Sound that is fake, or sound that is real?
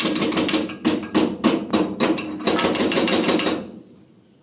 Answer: real